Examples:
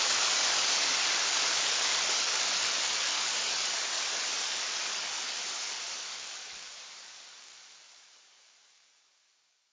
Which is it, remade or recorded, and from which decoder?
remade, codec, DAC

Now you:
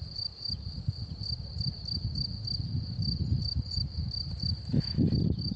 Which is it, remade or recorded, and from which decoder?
recorded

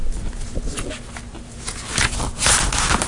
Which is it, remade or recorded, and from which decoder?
recorded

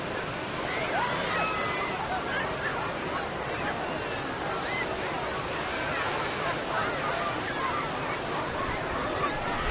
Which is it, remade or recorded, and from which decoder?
recorded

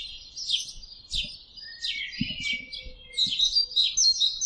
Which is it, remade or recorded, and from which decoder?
recorded